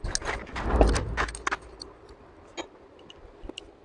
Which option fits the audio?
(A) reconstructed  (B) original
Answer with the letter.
B